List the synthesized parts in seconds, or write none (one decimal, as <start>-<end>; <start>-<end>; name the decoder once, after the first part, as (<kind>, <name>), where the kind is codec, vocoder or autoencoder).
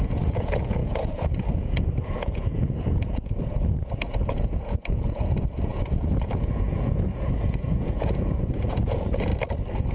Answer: 0.0-9.3 (vocoder, Vocos)